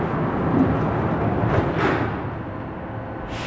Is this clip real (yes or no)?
yes